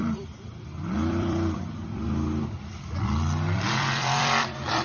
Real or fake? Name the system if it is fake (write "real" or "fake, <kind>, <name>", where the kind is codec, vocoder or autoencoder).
fake, vocoder, BigVGAN v2